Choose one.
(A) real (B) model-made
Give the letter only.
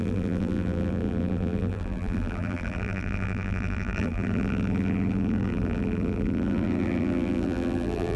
B